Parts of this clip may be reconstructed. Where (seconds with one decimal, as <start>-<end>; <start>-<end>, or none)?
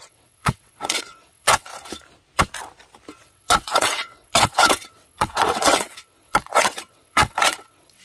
0.0-1.7; 3.2-8.0